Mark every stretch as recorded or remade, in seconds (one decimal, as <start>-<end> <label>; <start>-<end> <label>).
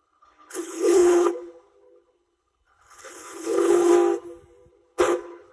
0.0-3.9 remade; 3.9-4.7 recorded; 4.7-5.5 remade